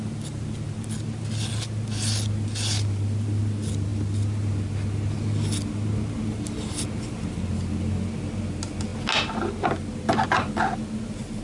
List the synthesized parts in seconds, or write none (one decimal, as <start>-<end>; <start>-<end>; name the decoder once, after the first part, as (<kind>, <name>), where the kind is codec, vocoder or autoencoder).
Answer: none